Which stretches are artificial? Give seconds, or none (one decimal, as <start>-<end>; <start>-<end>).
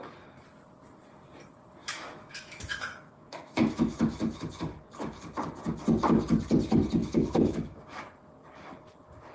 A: 1.8-4.5; 7.0-7.9